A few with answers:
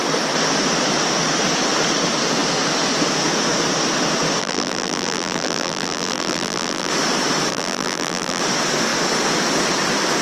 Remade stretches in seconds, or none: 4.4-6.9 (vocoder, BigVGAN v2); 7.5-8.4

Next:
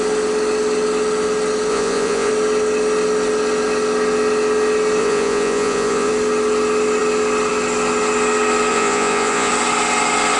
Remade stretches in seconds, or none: 1.7-2.3 (vocoder, Vocos); 5.0-6.1; 8.7-9.5

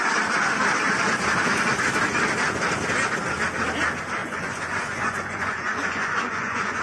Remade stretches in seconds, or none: 4.2-6.8 (vocoder, Vocos)